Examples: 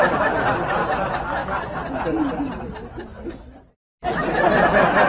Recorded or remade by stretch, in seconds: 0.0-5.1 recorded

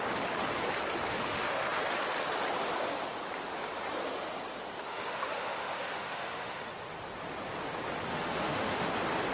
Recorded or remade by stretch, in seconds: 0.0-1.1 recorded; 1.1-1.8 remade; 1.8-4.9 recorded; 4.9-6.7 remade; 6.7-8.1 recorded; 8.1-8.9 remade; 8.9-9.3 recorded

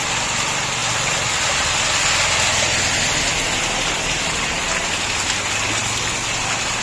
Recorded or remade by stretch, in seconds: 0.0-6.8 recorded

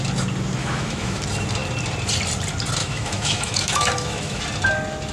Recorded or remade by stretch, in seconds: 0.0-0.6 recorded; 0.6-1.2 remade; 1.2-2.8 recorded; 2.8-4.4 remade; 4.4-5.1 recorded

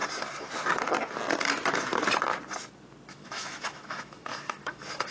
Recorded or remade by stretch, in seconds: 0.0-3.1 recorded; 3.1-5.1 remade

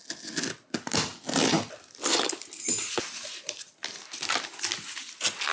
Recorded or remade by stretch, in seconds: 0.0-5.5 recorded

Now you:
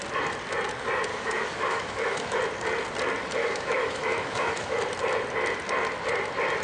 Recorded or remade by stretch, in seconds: 0.0-1.1 recorded; 1.1-2.4 remade; 2.4-3.4 recorded; 3.4-4.8 remade; 4.8-6.6 recorded

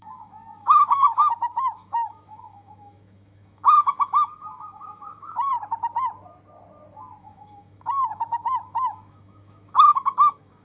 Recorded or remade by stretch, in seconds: 0.0-5.5 remade; 5.5-7.2 recorded; 7.2-10.6 remade